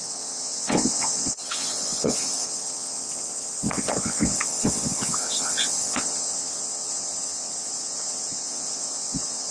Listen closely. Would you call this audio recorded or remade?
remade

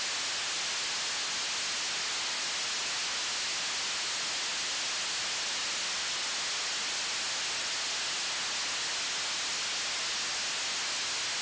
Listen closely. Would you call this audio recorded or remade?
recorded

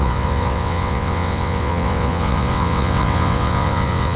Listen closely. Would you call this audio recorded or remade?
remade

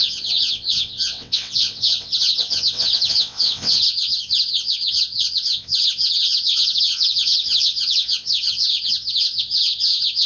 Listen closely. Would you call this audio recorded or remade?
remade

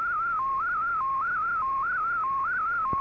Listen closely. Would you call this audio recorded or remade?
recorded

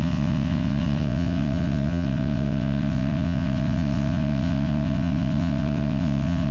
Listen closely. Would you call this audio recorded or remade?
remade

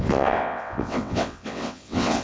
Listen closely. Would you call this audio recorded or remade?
remade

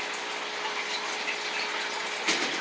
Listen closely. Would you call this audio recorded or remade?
recorded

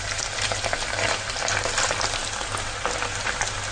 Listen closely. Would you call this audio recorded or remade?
recorded